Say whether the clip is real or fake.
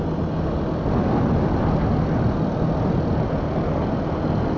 real